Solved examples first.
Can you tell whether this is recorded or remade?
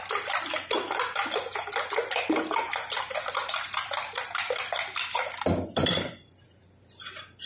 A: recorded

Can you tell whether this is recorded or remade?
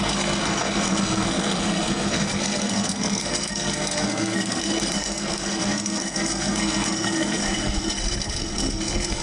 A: remade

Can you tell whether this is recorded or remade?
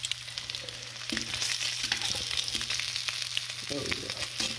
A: recorded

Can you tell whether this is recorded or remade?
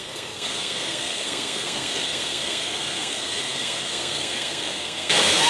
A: remade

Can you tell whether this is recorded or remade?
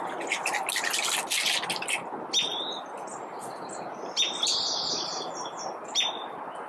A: recorded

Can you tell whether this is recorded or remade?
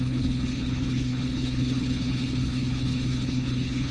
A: remade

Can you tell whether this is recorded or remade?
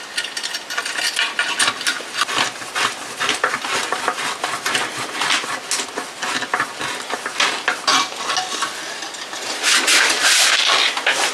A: recorded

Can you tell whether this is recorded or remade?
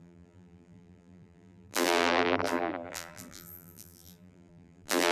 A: remade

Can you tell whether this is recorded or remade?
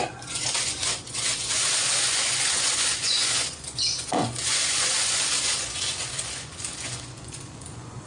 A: remade